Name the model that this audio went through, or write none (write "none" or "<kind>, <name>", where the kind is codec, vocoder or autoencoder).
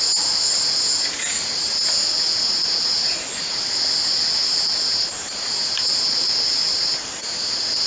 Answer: none